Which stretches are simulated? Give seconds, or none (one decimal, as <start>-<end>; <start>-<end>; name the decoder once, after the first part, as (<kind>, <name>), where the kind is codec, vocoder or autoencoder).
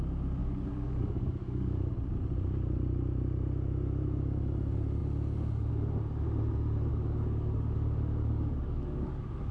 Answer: 0.4-1.9 (codec, DAC); 6.9-9.5